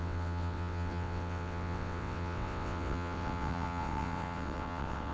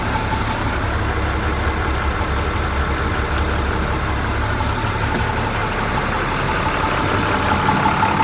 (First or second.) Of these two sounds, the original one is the second